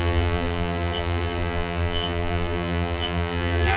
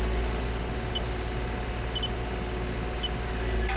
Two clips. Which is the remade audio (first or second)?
first